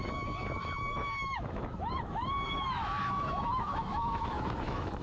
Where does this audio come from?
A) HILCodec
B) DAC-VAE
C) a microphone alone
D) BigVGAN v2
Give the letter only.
B